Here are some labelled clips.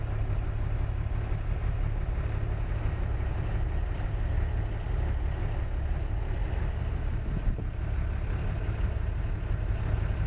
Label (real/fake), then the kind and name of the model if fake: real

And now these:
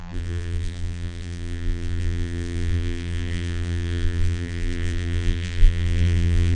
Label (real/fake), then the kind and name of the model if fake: fake, vocoder, BigVGAN v2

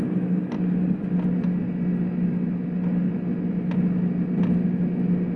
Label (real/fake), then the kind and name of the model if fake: real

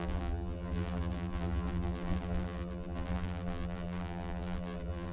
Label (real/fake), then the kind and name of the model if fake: fake, vocoder, BigVGAN v2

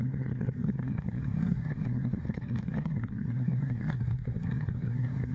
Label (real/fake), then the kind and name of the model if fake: fake, codec, SNAC